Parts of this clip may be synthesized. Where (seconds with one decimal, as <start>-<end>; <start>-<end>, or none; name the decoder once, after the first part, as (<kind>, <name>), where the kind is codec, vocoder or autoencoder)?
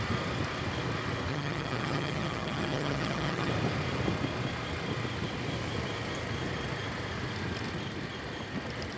1.3-3.5 (vocoder, HiFi-GAN)